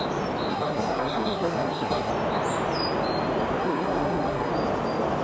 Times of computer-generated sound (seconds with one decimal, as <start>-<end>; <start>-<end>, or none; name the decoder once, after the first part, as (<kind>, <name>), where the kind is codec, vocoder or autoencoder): 0.5-2.1 (codec, SNAC); 3.6-4.5